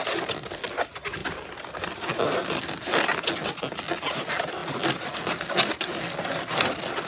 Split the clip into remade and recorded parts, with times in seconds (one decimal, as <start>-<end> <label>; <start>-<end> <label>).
0.0-7.1 recorded